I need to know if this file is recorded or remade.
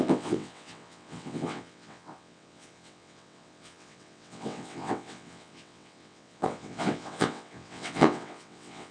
remade